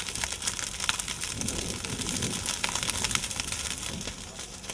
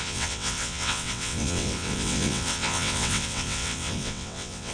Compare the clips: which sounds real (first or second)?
first